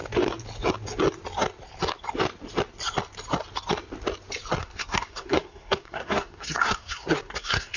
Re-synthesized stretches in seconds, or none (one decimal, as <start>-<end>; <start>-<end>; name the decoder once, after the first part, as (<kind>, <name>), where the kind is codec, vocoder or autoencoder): 4.6-7.8 (codec, SNAC)